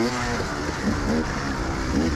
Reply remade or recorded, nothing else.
recorded